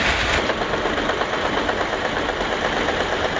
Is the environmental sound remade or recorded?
recorded